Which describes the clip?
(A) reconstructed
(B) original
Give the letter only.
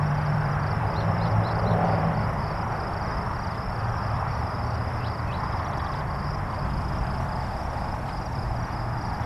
A